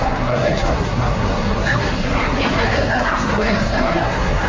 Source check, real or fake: fake